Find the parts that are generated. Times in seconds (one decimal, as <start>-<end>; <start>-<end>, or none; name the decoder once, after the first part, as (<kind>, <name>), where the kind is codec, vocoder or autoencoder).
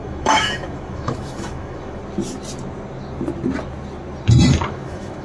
0.0-2.0 (autoencoder, DAC-VAE); 4.7-5.2